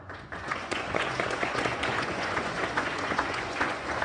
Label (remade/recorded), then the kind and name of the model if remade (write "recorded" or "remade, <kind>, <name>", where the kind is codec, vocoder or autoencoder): remade, vocoder, Vocos